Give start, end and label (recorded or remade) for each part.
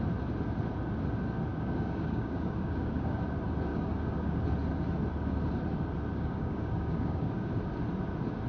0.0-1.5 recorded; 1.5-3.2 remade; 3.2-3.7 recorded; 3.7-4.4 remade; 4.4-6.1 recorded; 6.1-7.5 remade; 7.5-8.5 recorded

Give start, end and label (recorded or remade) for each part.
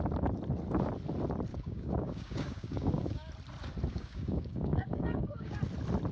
0.0-1.5 recorded; 1.5-3.3 remade; 3.3-3.9 recorded; 3.9-5.6 remade; 5.6-6.1 recorded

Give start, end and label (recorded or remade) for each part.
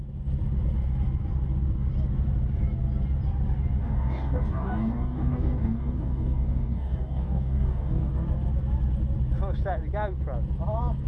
0.0-3.8 recorded; 3.8-8.1 remade; 8.1-11.1 recorded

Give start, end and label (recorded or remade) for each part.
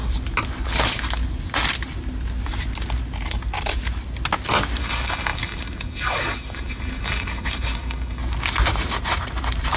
0.0-4.8 recorded; 4.8-8.2 remade; 8.2-9.8 recorded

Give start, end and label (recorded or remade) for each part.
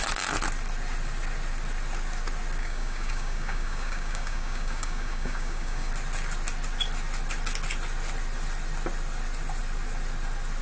0.0-2.6 recorded; 2.6-5.9 remade; 5.9-10.6 recorded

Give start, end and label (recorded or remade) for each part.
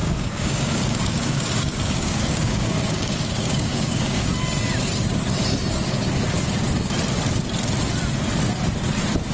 0.0-4.3 remade; 4.3-9.3 recorded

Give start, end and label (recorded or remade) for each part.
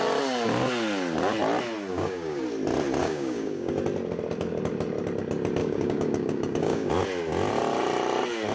0.0-1.9 recorded; 1.9-2.4 remade; 2.4-3.0 recorded; 3.0-3.7 remade; 3.7-5.6 recorded; 5.6-6.9 remade; 6.9-8.5 recorded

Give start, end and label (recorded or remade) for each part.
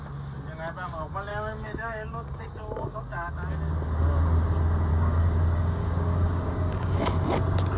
0.0-1.3 recorded; 1.3-3.3 remade; 3.3-4.9 recorded; 4.9-7.0 remade; 7.0-7.8 recorded